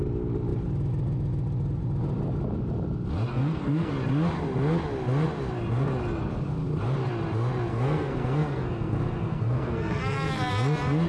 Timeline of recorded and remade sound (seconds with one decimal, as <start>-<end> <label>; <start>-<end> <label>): 0.0-3.3 recorded; 3.3-3.9 remade; 3.9-7.7 recorded; 7.7-10.5 remade; 10.5-11.1 recorded